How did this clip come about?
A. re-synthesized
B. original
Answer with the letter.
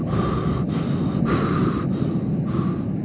B